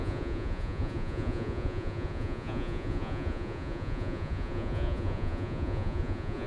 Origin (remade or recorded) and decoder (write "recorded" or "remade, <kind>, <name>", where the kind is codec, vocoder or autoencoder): remade, vocoder, Vocos